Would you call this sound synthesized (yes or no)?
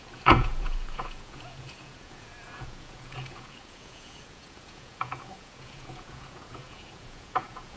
yes